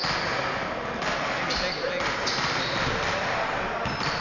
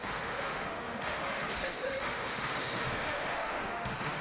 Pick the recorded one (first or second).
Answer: first